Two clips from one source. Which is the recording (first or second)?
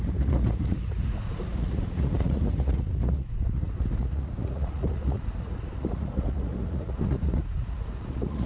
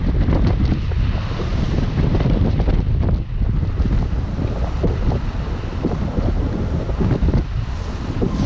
second